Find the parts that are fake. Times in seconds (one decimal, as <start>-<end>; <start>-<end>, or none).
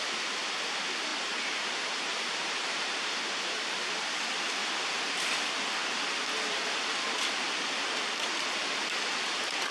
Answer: 1.1-3.2